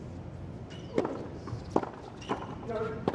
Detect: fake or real real